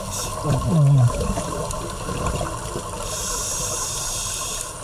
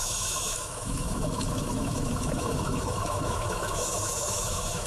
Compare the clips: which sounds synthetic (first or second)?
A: second